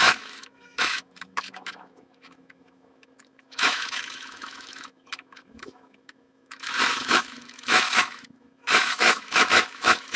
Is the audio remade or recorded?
remade